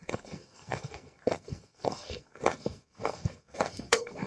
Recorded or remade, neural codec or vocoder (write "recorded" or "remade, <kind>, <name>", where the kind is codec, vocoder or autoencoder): remade, codec, SNAC